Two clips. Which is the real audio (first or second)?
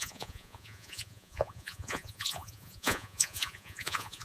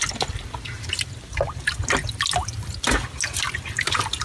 second